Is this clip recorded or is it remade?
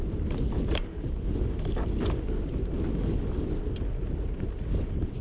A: recorded